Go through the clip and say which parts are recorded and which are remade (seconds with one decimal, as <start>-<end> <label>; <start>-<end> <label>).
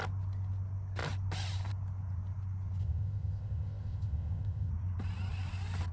0.0-2.8 recorded; 2.8-4.7 remade; 4.7-5.9 recorded